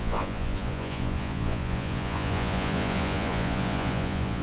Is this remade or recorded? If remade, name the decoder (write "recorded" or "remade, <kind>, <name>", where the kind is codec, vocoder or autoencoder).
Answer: remade, vocoder, Vocos